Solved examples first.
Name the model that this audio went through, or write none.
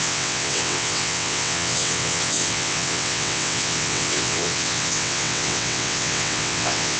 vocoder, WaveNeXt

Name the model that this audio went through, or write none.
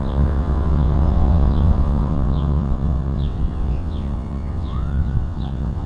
vocoder, WaveNeXt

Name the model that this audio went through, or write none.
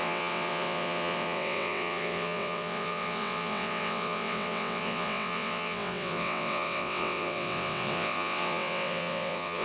vocoder, WaveNeXt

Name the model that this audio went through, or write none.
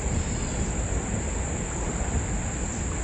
none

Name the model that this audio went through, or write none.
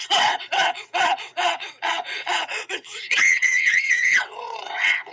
vocoder, WaveNeXt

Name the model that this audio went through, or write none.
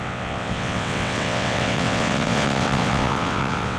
vocoder, WaveNeXt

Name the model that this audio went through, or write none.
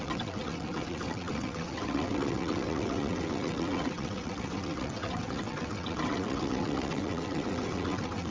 vocoder, WaveNeXt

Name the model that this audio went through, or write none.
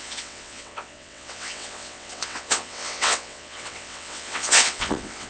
vocoder, WaveNeXt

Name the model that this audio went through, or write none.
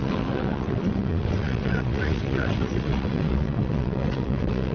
vocoder, WaveNeXt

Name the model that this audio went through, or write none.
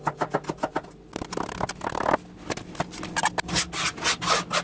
none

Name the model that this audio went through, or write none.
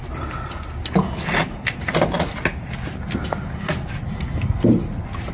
none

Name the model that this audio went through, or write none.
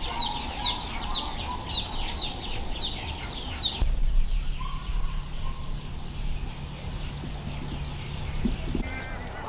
none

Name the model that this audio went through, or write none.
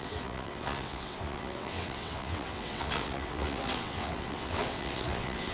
vocoder, WaveNeXt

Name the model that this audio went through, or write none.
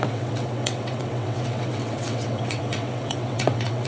vocoder, WaveNeXt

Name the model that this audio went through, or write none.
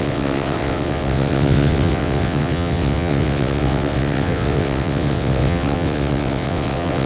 vocoder, WaveNeXt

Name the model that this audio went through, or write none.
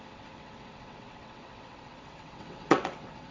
vocoder, WaveNeXt